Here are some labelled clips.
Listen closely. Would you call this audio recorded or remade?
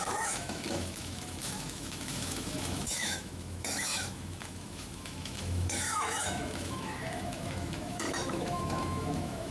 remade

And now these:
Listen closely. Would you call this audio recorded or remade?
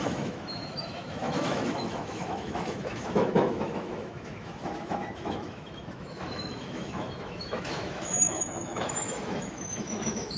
remade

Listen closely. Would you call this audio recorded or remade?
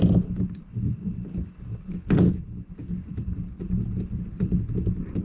recorded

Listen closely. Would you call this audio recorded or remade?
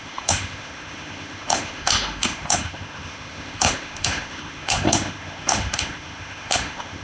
remade